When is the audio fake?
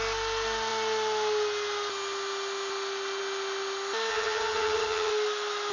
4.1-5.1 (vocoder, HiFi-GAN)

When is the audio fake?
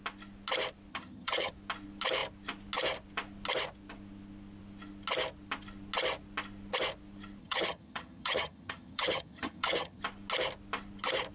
0.9-1.5 (vocoder, HiFi-GAN); 7.4-10.0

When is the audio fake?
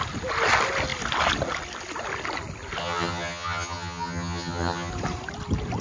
2.8-4.9 (vocoder, HiFi-GAN)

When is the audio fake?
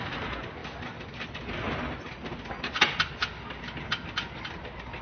none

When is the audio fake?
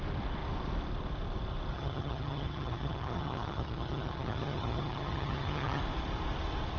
1.7-5.8 (vocoder, HiFi-GAN)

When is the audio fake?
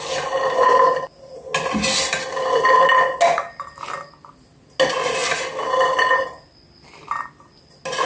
none